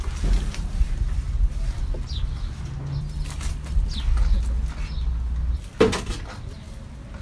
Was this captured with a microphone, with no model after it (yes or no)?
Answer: yes